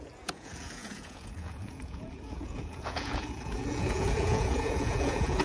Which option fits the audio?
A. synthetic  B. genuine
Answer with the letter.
A